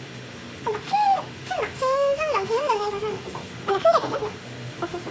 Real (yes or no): no